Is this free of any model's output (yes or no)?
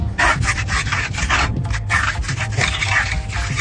yes